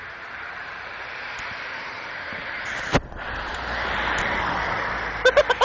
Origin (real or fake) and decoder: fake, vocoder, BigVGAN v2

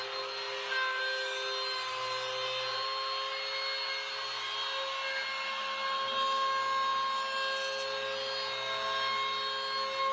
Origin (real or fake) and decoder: real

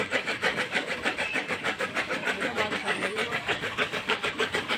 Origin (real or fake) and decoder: fake, codec, DAC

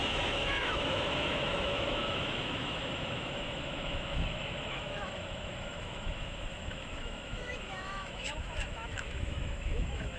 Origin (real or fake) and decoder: fake, autoencoder, DAC-VAE